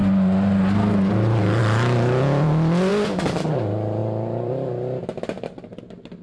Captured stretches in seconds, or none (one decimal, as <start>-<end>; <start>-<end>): 0.0-4.0; 5.8-6.2